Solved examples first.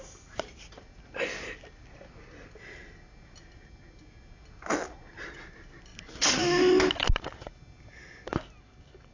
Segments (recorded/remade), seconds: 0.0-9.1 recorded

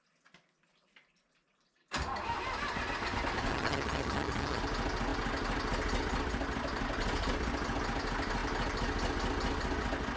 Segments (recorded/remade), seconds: 0.0-3.5 recorded; 3.5-4.6 remade; 4.6-10.2 recorded

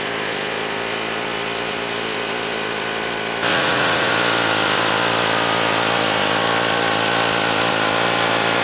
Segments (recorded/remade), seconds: 0.0-3.5 recorded; 3.5-4.1 remade; 4.1-8.6 recorded